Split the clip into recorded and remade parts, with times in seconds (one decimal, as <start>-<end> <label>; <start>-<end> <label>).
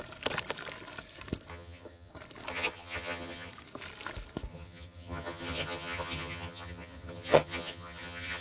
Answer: 0.0-1.5 recorded; 1.5-2.1 remade; 2.1-2.5 recorded; 2.5-3.5 remade; 3.5-4.5 recorded; 4.5-8.4 remade